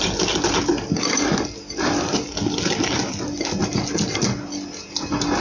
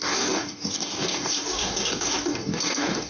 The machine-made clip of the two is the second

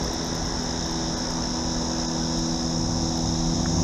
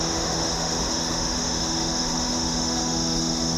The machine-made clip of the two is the second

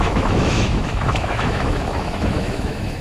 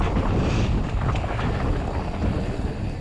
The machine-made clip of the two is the first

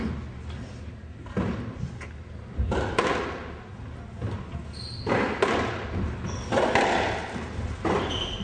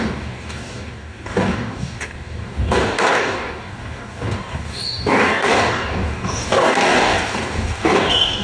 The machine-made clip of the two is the second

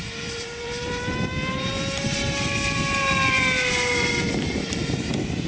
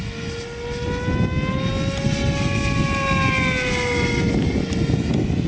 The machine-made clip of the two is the first